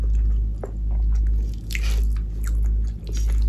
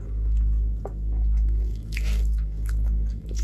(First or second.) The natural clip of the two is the first